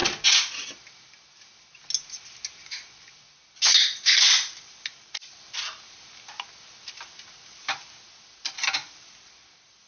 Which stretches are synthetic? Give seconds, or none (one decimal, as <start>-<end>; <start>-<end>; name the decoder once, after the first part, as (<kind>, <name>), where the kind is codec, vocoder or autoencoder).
none